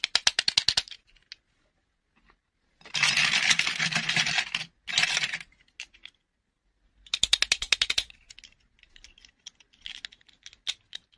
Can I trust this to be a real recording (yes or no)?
yes